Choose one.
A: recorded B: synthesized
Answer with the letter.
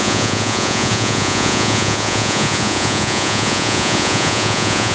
B